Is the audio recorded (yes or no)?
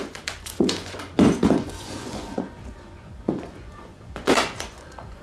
no